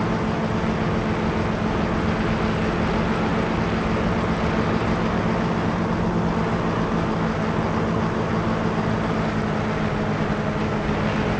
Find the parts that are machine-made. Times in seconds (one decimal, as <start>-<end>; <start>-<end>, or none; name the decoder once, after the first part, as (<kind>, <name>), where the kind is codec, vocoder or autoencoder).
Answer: none

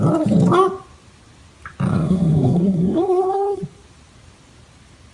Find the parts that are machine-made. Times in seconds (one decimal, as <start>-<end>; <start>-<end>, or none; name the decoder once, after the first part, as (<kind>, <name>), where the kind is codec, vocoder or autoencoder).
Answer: 1.9-3.6 (codec, SNAC)

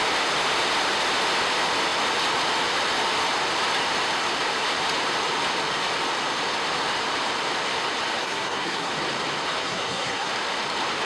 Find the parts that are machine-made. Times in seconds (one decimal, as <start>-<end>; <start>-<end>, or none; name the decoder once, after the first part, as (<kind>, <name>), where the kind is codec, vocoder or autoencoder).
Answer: 8.2-8.9 (codec, SNAC); 9.6-10.3